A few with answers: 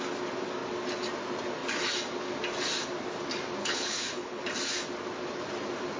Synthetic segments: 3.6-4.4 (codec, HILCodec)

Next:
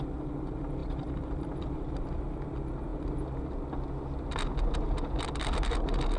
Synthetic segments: 0.8-2.2 (vocoder, BigVGAN v2)

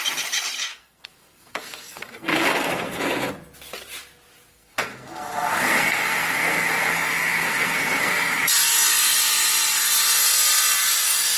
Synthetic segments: 0.7-3.3 (codec, SNAC); 4.5-8.4

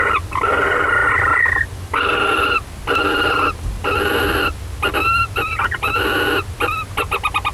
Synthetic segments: none

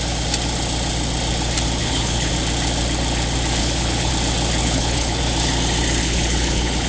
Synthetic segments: 1.8-2.3 (codec, HILCodec); 3.6-4.1; 4.6-5.2; 6.0-6.9

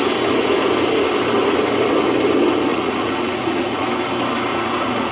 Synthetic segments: 2.7-3.8 (vocoder, Vocos); 4.5-5.1

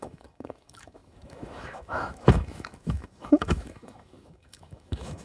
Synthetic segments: 0.0-5.2 (autoencoder, DAC-VAE)

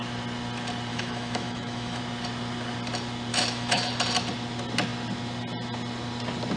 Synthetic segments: 0.9-2.0 (autoencoder, DAC-VAE); 3.3-3.9